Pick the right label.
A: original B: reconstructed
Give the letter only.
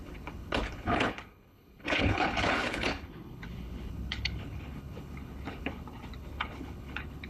B